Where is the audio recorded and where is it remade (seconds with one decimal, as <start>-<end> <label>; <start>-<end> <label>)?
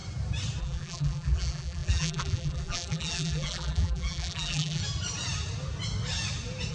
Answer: 0.0-0.6 recorded; 0.6-4.8 remade; 4.8-6.7 recorded